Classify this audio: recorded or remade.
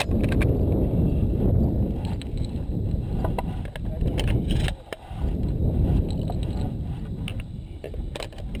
recorded